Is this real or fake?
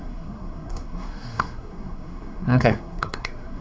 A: fake